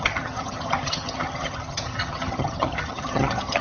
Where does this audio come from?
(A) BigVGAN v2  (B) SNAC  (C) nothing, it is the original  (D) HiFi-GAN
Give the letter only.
D